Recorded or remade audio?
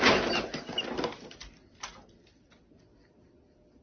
recorded